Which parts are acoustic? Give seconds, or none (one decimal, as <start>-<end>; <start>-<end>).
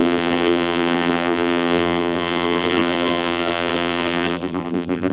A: none